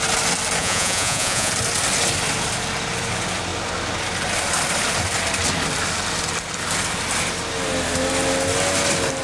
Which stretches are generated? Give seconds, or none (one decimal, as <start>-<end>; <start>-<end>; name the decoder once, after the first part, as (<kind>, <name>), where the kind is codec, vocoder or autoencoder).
0.6-1.5 (vocoder, Vocos)